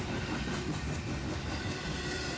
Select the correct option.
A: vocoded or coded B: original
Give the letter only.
B